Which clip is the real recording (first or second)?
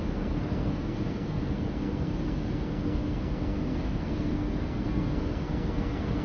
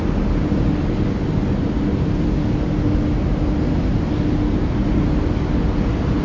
second